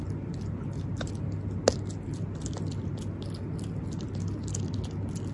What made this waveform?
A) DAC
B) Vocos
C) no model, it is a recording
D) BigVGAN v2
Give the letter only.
C